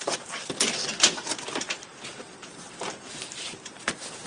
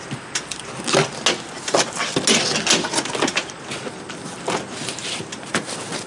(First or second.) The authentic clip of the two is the second